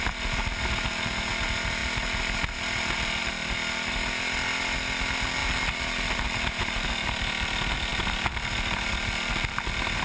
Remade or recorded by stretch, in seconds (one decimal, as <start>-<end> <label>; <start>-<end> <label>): 0.0-10.0 recorded